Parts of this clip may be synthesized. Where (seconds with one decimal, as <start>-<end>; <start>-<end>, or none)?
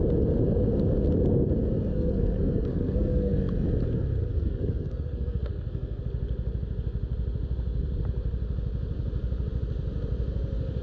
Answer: 1.9-3.4; 4.3-6.0